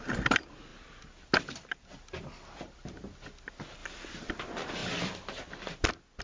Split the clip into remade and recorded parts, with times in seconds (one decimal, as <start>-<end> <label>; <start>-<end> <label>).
0.0-6.2 recorded